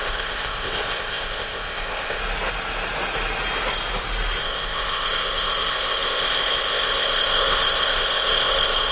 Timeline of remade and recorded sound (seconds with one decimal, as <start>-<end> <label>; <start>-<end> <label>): 0.0-2.2 remade; 2.2-4.4 recorded; 4.4-8.9 remade